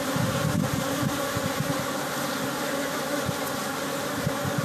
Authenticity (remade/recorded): recorded